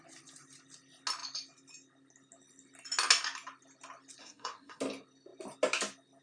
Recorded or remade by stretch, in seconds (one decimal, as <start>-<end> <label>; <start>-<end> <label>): 0.0-4.2 recorded; 4.2-4.8 remade; 4.8-6.2 recorded